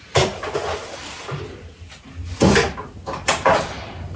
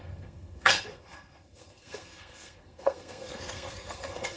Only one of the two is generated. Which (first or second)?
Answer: second